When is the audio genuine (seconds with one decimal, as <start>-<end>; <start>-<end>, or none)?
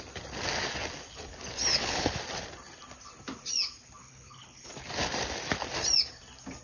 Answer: 0.0-1.7; 2.2-4.0; 4.7-6.6